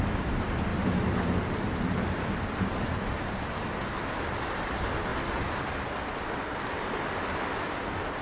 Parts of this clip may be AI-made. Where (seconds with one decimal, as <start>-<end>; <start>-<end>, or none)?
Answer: 0.0-0.7; 2.1-5.1; 6.3-8.2